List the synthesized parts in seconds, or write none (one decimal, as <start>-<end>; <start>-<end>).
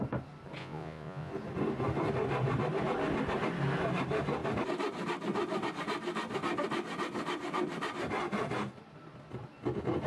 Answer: 0.6-1.3